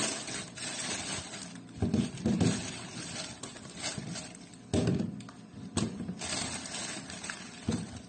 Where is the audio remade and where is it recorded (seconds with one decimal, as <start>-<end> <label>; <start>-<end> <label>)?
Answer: 0.0-8.1 recorded